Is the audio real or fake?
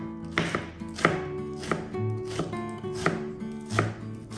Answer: real